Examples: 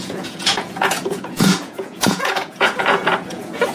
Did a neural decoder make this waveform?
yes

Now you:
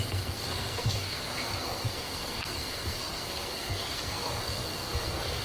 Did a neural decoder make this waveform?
yes